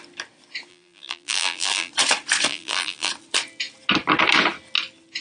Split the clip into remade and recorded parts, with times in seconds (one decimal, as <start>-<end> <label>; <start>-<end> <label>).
0.0-0.7 recorded; 0.7-1.9 remade; 1.9-2.5 recorded; 2.5-3.1 remade; 3.1-5.2 recorded